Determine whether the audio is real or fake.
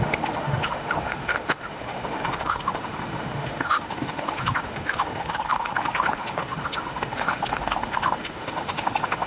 fake